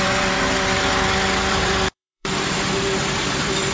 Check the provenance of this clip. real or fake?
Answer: fake